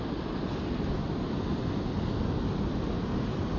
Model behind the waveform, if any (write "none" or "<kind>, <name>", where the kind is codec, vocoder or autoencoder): none